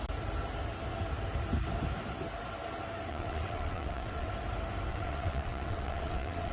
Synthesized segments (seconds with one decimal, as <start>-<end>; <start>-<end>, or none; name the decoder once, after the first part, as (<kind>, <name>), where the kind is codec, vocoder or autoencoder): 3.1-4.3 (vocoder, WaveNeXt); 4.9-6.5